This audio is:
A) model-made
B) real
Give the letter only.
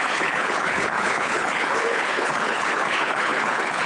A